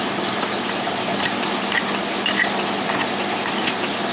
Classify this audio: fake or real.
real